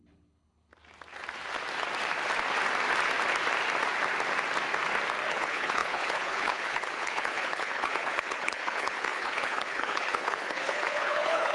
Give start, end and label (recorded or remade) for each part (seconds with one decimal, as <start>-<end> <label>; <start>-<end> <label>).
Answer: 0.0-0.7 remade; 0.7-5.3 recorded; 5.3-11.5 remade